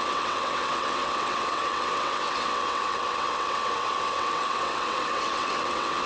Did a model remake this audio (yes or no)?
yes